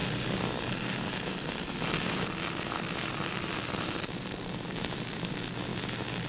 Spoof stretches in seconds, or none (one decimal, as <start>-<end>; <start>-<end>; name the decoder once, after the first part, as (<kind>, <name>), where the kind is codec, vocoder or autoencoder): 0.0-3.8 (vocoder, BigVGAN v2)